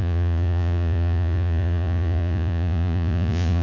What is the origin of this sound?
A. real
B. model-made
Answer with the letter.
B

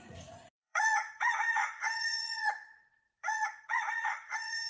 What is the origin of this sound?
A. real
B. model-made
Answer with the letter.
B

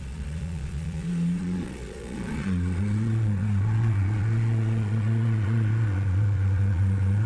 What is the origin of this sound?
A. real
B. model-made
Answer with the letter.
B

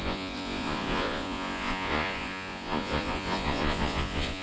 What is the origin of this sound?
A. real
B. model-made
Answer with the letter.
B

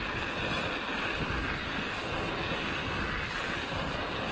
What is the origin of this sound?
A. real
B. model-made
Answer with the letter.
A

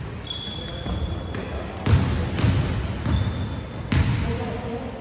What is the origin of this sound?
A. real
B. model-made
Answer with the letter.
A